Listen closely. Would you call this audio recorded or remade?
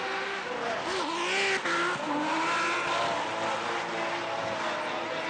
recorded